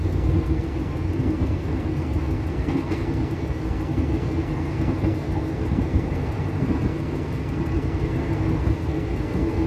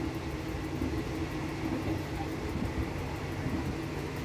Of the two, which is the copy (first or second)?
first